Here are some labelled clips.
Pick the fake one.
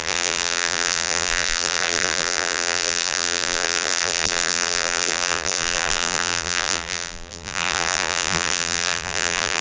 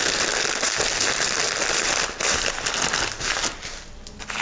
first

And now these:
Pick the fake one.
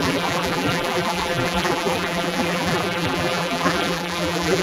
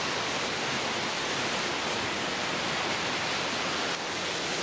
first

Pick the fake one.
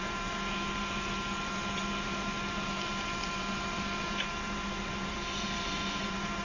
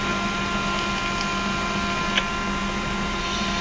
first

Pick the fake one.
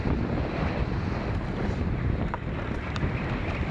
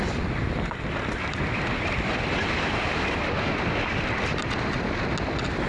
first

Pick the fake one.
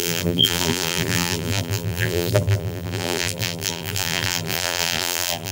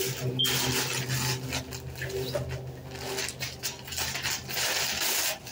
first